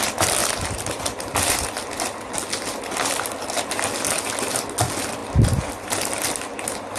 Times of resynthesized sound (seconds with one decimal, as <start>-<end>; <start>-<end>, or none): none